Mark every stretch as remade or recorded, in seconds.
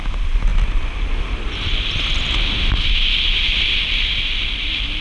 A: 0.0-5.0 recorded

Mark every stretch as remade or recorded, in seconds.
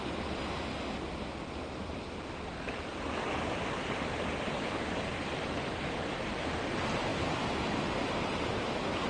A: 0.0-9.1 recorded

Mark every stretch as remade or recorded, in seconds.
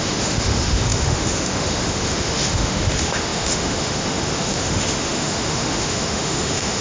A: 0.0-6.8 remade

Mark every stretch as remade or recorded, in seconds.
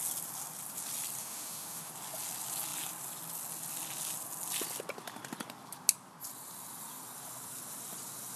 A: 0.0-1.2 recorded; 1.2-1.9 remade; 1.9-8.4 recorded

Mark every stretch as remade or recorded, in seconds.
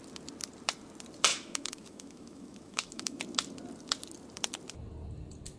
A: 0.0-1.3 recorded; 1.3-3.2 remade; 3.2-5.6 recorded